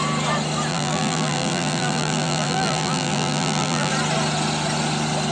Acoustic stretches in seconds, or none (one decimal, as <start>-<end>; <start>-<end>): 0.0-0.7; 3.9-5.3